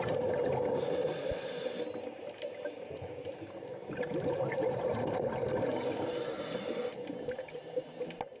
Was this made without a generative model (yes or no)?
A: yes